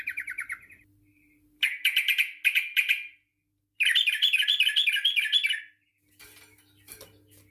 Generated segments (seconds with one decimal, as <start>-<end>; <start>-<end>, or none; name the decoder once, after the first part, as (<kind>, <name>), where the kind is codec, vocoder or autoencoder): none